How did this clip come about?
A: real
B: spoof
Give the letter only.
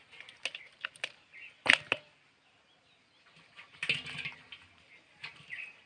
A